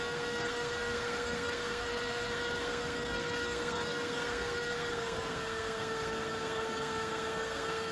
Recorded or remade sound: remade